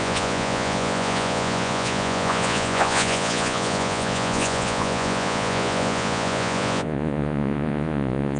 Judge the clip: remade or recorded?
remade